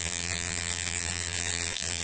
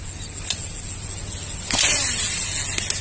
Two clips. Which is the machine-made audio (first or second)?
first